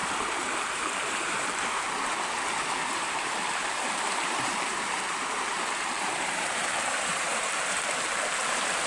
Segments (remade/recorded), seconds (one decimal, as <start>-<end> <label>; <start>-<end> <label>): 0.0-8.9 remade